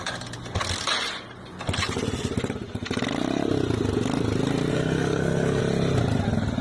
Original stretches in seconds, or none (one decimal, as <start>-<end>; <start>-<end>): 0.0-4.7; 5.6-6.6